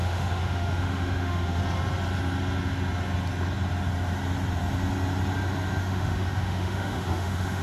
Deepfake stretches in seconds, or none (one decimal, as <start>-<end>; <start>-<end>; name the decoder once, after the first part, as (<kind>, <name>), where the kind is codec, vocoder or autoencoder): 0.0-1.6 (autoencoder, DAC-VAE); 5.8-7.6